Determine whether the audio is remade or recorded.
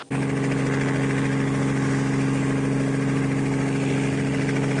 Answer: recorded